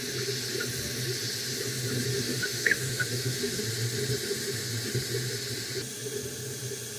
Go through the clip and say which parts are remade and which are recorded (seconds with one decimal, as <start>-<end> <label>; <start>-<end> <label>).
0.0-2.1 recorded; 2.1-3.6 remade; 3.6-7.0 recorded